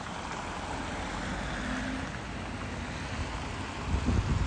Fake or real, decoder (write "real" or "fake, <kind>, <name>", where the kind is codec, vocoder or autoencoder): real